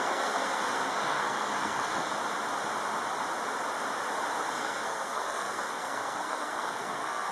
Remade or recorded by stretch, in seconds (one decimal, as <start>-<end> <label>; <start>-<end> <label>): 0.0-2.1 remade; 2.1-4.5 recorded; 4.5-7.3 remade